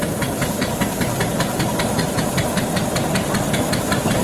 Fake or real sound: real